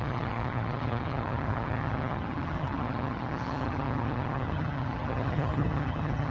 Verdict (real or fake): fake